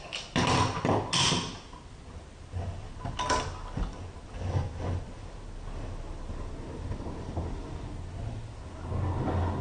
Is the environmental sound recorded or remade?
recorded